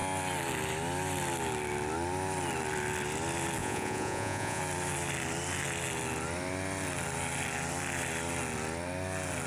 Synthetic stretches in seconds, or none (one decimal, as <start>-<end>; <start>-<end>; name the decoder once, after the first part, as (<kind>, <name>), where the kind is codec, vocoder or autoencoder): 3.6-4.6 (vocoder, Vocos)